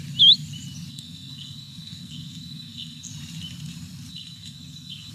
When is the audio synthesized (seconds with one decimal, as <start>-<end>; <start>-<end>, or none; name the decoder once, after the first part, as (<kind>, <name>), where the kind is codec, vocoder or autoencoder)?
0.9-3.1 (codec, SNAC); 4.1-5.1